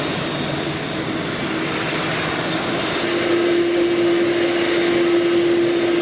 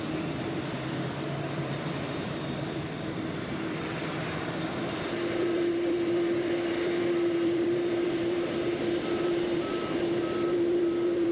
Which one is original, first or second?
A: first